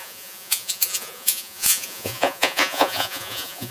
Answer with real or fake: fake